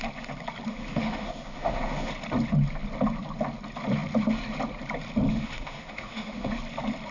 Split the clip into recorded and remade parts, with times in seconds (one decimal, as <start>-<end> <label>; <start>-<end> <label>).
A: 0.0-0.7 recorded; 0.7-2.1 remade; 2.1-5.3 recorded; 5.3-6.6 remade; 6.6-7.1 recorded